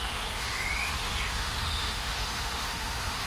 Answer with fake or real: fake